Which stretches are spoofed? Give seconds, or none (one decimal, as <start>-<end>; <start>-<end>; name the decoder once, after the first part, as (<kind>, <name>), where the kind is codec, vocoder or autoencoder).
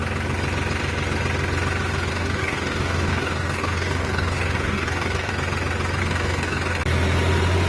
2.1-5.3 (codec, DAC); 6.0-6.8